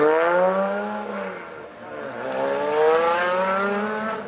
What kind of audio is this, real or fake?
real